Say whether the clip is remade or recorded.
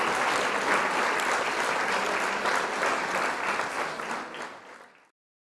recorded